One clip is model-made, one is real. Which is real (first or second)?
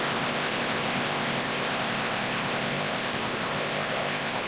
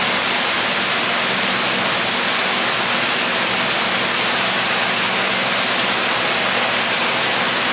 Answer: second